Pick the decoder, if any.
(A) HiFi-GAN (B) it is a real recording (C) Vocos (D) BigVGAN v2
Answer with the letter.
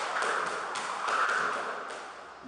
B